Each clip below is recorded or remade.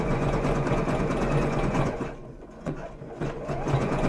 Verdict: remade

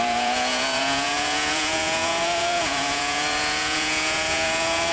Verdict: remade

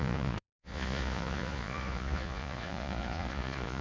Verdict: remade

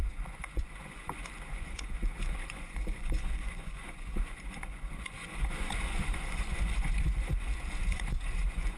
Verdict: remade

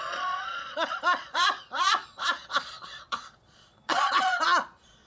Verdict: remade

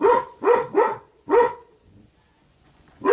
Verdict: remade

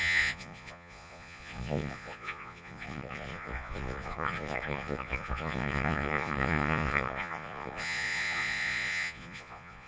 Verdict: remade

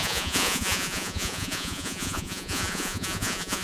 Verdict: remade